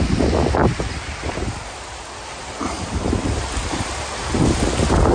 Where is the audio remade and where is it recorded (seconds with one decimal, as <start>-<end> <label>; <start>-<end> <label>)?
0.0-5.1 recorded